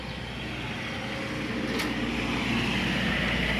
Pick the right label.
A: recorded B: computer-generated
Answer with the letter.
A